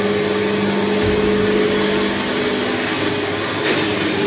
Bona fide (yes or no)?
yes